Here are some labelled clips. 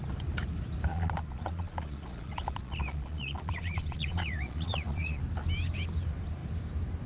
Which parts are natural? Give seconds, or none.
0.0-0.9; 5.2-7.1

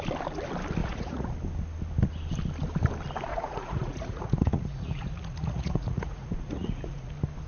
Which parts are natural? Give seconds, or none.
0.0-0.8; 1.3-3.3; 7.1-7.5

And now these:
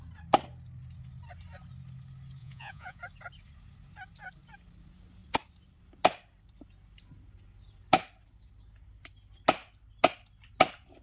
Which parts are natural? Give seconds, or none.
0.0-2.4; 3.0-11.0

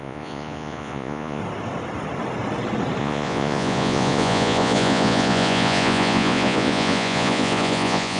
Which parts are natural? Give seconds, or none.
1.4-3.0